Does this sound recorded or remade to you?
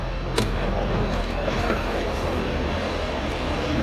remade